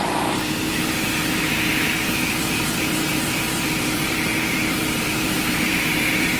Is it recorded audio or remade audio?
remade